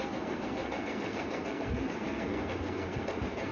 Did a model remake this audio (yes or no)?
yes